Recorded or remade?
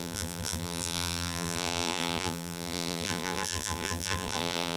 remade